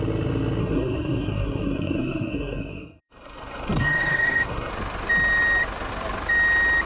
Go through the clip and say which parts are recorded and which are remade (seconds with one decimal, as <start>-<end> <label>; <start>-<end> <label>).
0.0-0.6 recorded; 0.6-4.7 remade; 4.7-6.9 recorded

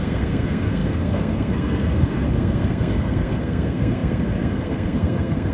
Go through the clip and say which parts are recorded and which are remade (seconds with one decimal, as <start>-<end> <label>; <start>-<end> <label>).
0.0-5.5 remade

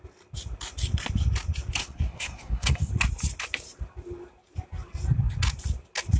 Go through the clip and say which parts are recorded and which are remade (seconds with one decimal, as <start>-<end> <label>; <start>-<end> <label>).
0.0-1.8 recorded; 1.8-2.9 remade; 2.9-6.2 recorded

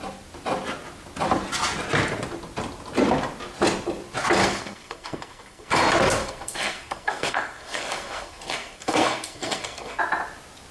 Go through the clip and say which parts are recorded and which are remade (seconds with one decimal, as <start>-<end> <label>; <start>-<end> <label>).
0.0-4.4 recorded; 4.4-5.7 remade; 5.7-6.2 recorded; 6.2-10.0 remade; 10.0-10.7 recorded

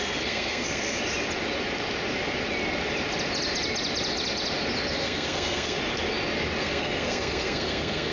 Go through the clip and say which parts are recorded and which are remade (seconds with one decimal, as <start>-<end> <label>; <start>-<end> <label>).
0.0-1.0 remade; 1.0-4.9 recorded; 4.9-5.8 remade; 5.8-6.6 recorded; 6.6-8.1 remade

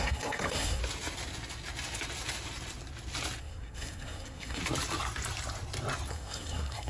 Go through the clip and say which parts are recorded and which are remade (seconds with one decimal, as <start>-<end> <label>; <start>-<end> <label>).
0.0-0.8 remade; 0.8-3.4 recorded; 3.4-4.6 remade; 4.6-6.1 recorded; 6.1-6.9 remade

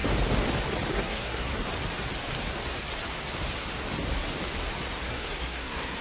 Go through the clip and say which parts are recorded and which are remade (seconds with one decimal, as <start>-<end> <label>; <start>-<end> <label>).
0.0-0.9 recorded; 0.9-1.5 remade; 1.5-5.1 recorded; 5.1-6.0 remade